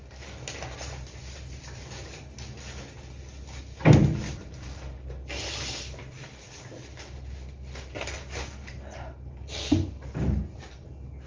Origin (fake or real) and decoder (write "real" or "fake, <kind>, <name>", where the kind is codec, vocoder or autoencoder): real